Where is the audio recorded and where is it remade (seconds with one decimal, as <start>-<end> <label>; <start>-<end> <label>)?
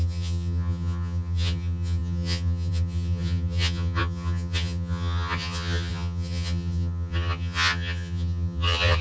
0.0-9.0 remade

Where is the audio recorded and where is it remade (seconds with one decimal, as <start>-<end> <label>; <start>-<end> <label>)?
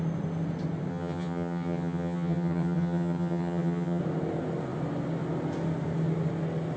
0.0-0.9 recorded; 0.9-4.0 remade; 4.0-6.8 recorded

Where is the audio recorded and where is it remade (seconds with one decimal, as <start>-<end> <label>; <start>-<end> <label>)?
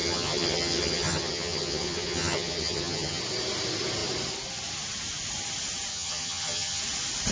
0.0-3.2 remade; 3.2-5.9 recorded; 5.9-6.8 remade; 6.8-7.3 recorded